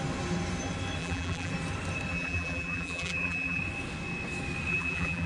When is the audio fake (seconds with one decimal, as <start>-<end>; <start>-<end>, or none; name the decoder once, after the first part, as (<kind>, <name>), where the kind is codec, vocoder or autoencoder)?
1.0-1.5 (vocoder, BigVGAN v2); 2.1-3.6; 4.7-5.3